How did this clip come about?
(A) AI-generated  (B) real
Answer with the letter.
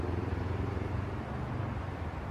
B